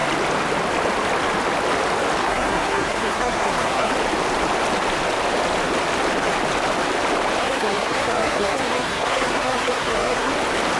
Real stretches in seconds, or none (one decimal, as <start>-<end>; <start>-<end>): 0.0-2.2; 3.9-7.4; 10.3-10.8